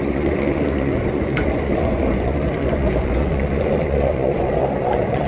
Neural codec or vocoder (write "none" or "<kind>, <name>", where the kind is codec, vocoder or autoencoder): vocoder, Vocos